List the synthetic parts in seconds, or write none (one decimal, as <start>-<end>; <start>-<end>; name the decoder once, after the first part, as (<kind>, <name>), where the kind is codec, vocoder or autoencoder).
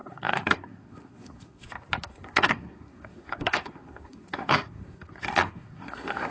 0.0-1.7 (codec, SNAC); 2.1-6.3